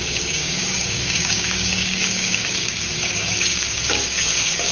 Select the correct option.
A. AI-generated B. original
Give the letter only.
A